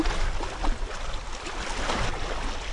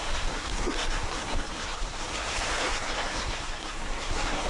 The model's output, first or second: second